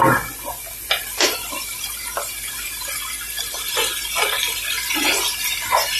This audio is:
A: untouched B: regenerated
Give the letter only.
A